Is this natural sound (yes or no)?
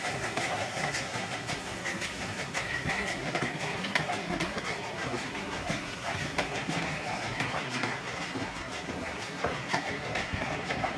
no